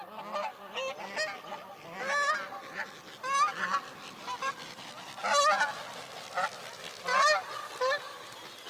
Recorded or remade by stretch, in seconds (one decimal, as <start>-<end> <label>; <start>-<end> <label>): 0.0-8.7 recorded